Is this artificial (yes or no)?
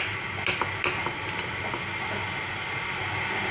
no